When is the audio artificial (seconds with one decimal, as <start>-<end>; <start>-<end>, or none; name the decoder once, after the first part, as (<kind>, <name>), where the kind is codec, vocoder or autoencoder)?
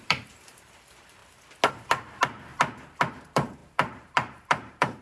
0.0-1.2 (vocoder, BigVGAN v2); 1.7-2.5; 3.1-5.0